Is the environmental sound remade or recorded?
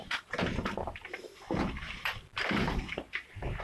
remade